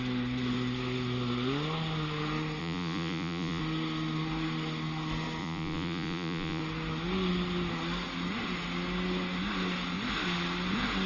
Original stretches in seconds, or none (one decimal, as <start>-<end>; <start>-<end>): 0.0-2.6; 3.6-5.4; 6.6-11.1